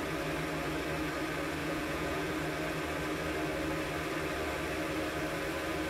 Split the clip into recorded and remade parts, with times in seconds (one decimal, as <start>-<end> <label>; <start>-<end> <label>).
0.0-1.6 recorded; 1.6-2.3 remade; 2.3-5.9 recorded